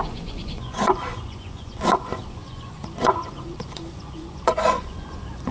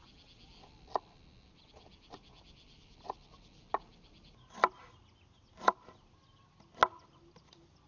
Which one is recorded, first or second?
second